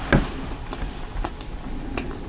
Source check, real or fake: real